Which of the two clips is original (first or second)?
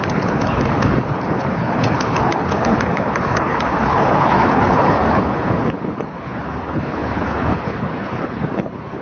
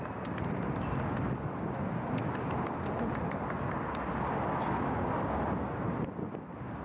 second